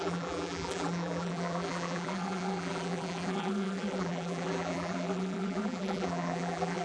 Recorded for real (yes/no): no